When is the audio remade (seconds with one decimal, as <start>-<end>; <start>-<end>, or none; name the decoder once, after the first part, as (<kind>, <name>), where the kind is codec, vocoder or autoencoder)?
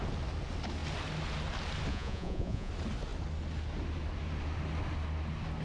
1.9-2.7 (vocoder, Vocos)